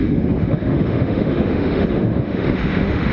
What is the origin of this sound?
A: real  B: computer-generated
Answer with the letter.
B